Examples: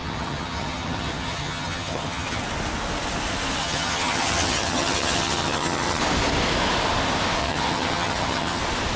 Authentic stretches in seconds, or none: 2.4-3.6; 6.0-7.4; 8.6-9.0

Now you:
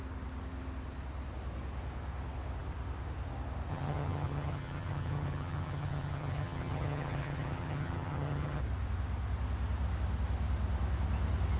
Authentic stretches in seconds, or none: 0.0-3.7; 8.6-11.6

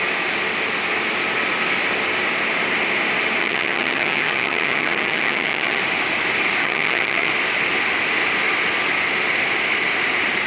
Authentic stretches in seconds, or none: 0.0-3.4; 5.8-6.6; 7.3-10.5

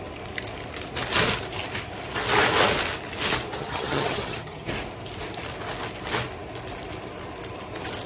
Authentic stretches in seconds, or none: 0.0-3.6; 4.7-8.1

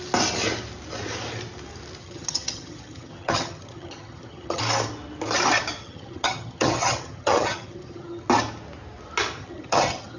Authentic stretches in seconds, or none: 0.0-2.0; 4.6-5.8; 8.3-9.4